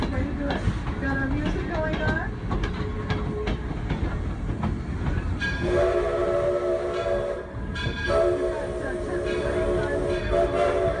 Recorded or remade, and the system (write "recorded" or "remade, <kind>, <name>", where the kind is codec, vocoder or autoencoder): recorded